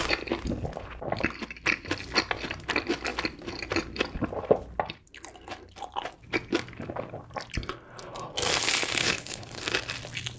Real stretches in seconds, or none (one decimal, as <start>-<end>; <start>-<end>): 0.0-9.0; 9.6-10.4